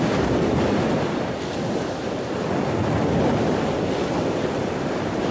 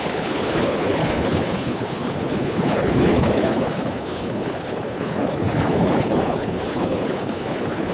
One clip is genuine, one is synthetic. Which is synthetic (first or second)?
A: second